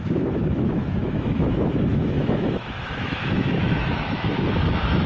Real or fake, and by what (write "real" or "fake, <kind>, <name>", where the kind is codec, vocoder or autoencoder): fake, autoencoder, DAC-VAE